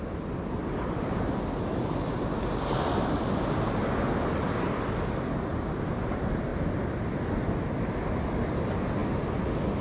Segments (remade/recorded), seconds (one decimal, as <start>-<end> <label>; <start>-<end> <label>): 0.0-9.8 recorded